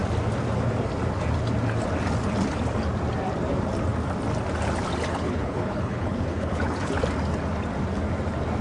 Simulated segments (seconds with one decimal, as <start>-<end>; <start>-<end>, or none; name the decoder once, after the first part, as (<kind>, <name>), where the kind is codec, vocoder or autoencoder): 5.1-7.0 (codec, HILCodec)